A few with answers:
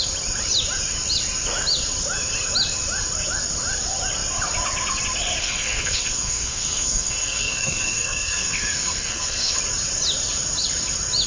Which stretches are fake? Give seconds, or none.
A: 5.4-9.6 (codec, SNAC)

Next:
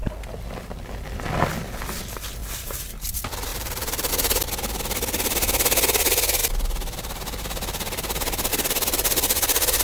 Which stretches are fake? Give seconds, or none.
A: 2.4-3.1 (vocoder, BigVGAN v2); 3.5-4.1

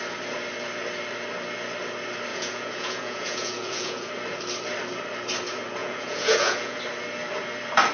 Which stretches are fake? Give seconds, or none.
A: 2.3-4.1 (vocoder, Vocos); 5.8-6.8

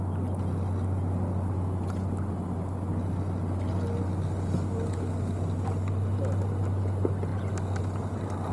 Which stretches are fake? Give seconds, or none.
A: none

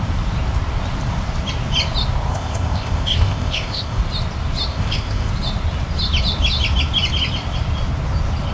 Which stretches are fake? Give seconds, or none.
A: 2.3-4.0 (codec, ZipCodec); 4.7-5.3